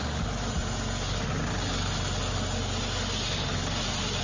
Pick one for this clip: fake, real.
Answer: real